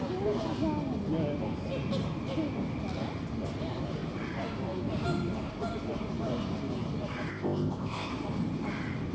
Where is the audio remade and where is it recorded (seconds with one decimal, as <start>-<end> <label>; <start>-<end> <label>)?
0.0-7.3 recorded; 7.3-8.1 remade; 8.1-9.1 recorded